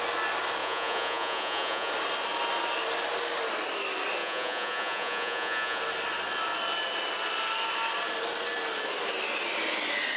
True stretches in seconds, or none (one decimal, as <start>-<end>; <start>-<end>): 0.0-0.6; 1.9-4.2; 5.8-10.2